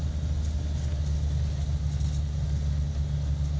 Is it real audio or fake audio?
real